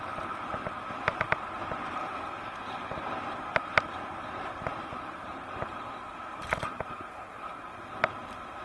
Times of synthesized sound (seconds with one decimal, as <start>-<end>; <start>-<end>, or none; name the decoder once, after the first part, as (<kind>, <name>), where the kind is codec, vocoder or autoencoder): 5.3-7.8 (vocoder, BigVGAN v2)